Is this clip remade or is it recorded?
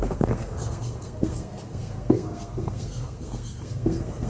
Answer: remade